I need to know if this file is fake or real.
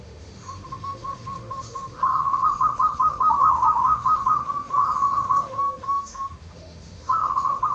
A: fake